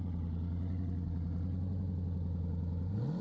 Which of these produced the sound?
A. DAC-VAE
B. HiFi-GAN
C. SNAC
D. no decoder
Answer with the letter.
D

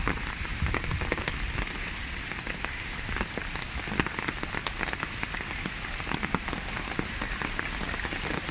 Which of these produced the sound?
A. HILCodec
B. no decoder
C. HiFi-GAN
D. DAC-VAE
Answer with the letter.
B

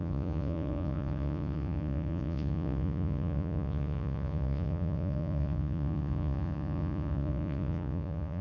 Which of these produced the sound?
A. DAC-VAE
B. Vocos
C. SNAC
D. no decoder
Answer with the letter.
B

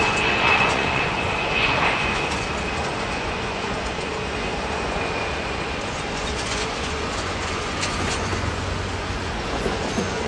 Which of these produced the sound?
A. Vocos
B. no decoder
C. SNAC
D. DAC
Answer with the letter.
A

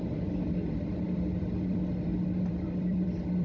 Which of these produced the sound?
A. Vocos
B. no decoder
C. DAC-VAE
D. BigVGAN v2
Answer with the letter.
D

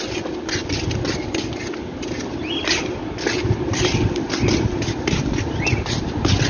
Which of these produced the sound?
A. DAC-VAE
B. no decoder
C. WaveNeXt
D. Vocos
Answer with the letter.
B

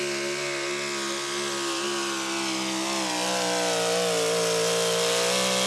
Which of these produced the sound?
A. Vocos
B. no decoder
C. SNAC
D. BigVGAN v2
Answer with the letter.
B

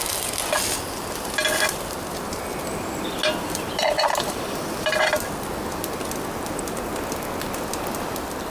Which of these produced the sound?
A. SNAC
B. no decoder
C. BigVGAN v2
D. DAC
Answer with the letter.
B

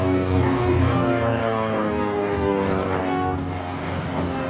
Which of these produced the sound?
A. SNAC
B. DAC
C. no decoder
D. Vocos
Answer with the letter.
B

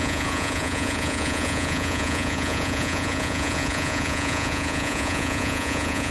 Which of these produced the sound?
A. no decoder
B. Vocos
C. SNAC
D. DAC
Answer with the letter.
B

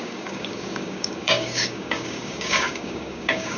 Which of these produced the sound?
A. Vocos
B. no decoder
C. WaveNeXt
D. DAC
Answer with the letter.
D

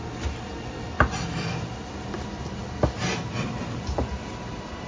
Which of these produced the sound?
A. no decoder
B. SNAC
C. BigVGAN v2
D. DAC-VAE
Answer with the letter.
A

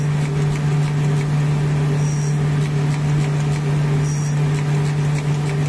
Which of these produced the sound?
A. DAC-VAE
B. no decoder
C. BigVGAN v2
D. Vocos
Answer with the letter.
B